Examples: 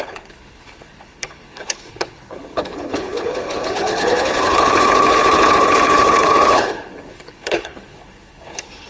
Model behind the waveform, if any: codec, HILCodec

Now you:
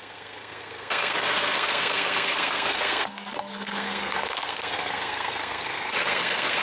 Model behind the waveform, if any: codec, SNAC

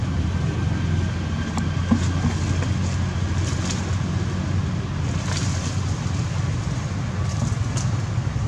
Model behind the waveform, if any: none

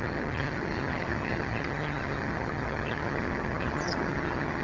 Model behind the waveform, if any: vocoder, HiFi-GAN